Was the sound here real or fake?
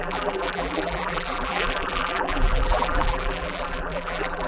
fake